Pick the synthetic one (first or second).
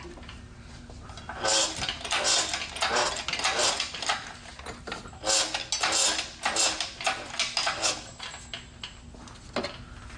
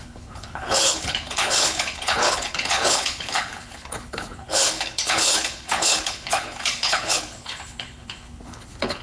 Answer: second